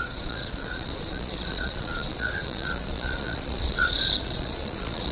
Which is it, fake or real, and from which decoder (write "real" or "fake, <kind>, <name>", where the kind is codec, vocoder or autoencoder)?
fake, vocoder, Vocos